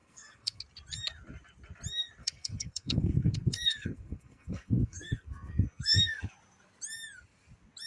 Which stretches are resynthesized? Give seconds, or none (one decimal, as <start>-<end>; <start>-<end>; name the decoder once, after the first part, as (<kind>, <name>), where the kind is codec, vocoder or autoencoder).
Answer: 0.0-0.6 (codec, SNAC); 2.2-6.3